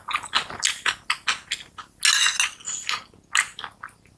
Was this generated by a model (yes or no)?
no